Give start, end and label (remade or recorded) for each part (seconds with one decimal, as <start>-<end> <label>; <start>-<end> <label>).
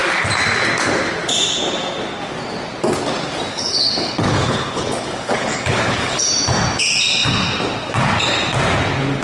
0.0-3.5 recorded; 3.5-6.3 remade; 6.3-9.2 recorded